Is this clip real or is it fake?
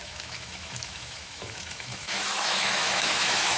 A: fake